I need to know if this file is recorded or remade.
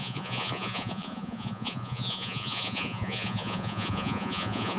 remade